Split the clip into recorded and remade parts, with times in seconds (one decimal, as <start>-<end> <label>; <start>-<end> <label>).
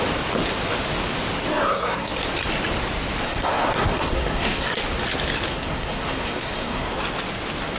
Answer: 0.0-1.5 recorded; 1.5-2.1 remade; 2.1-3.2 recorded; 3.2-4.8 remade; 4.8-5.5 recorded; 5.5-7.0 remade; 7.0-7.8 recorded